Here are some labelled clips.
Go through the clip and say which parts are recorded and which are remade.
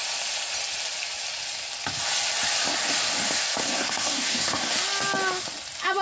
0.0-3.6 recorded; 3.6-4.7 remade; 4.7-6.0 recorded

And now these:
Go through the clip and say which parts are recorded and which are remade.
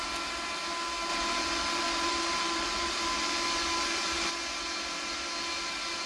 0.0-1.1 recorded; 1.1-4.3 remade; 4.3-6.1 recorded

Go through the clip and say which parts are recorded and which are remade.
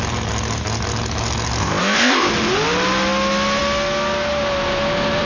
0.0-1.6 recorded; 1.6-2.3 remade; 2.3-5.3 recorded